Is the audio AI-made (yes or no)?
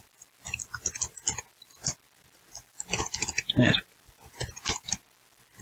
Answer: no